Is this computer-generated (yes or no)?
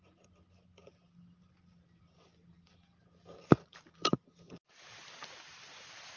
no